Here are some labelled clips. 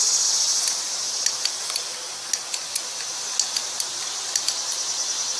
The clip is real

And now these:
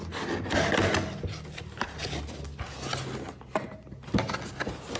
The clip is real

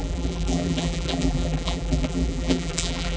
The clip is fake